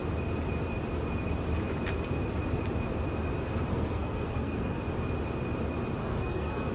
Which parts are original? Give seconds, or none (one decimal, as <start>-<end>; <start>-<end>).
0.0-3.7; 4.8-6.0